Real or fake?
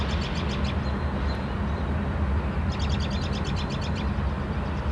real